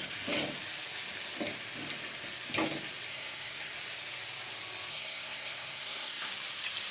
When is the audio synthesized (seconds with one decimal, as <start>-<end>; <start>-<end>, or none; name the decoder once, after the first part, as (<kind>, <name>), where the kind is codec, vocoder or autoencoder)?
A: 3.1-3.7 (codec, SNAC); 4.9-6.3